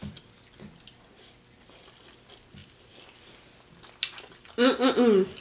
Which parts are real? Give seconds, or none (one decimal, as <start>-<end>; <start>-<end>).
0.0-5.4